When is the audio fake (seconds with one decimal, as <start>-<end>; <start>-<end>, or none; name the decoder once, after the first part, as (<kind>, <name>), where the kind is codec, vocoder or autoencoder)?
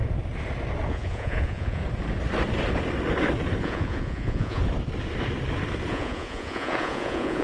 0.9-1.8 (vocoder, Vocos); 3.6-4.6; 5.9-7.4